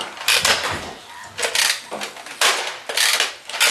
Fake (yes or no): no